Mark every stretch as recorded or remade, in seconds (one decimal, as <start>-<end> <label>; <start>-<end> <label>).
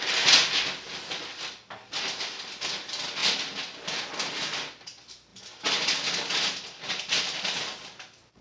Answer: 0.0-8.4 recorded